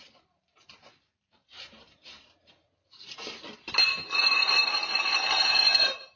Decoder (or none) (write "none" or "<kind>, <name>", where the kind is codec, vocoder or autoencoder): vocoder, BigVGAN v2